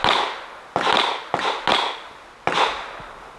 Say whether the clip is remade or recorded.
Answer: recorded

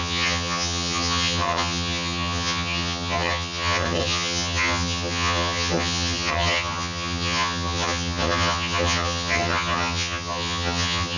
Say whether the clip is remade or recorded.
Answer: remade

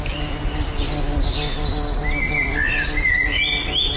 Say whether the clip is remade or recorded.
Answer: recorded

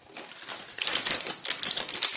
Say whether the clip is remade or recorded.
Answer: recorded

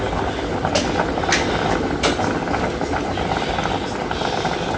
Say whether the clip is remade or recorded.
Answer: recorded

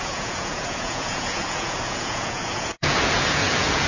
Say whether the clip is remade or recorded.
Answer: remade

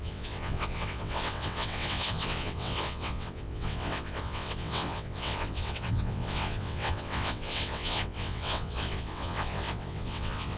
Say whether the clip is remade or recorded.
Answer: remade